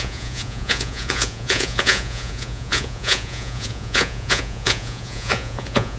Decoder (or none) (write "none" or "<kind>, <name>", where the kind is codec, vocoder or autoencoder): vocoder, Vocos